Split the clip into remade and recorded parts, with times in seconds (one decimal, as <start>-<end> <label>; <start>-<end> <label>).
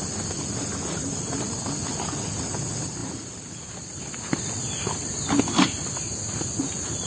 0.0-7.1 recorded